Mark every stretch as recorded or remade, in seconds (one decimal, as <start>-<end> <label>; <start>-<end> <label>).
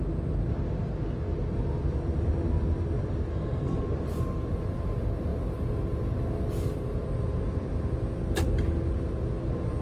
0.0-3.3 recorded; 3.3-3.8 remade; 3.8-9.8 recorded